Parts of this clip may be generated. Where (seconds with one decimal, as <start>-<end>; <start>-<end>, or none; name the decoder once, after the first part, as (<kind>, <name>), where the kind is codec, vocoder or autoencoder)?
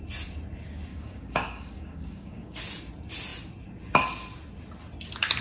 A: 0.9-2.6 (codec, DAC)